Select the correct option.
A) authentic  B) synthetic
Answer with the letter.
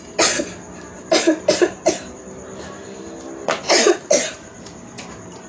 A